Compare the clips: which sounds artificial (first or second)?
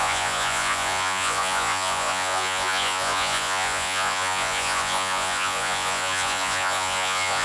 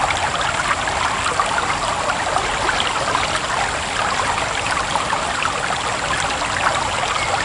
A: first